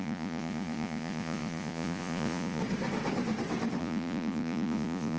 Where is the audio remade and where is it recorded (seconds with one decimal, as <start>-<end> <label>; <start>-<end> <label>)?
0.0-2.6 remade; 2.6-3.8 recorded; 3.8-5.2 remade